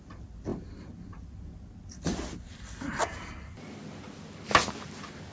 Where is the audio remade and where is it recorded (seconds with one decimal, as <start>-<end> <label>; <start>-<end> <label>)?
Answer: 0.0-5.3 recorded